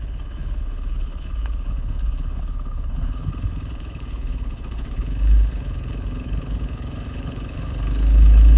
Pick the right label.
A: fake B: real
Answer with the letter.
A